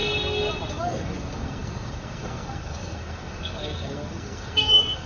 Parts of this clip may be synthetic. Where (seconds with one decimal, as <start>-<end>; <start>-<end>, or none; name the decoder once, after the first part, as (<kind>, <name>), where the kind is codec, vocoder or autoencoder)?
0.7-5.1 (codec, SNAC)